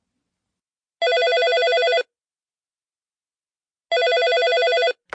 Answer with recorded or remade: recorded